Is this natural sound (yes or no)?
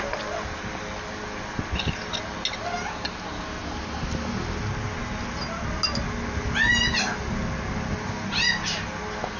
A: yes